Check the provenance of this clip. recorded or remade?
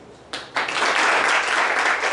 recorded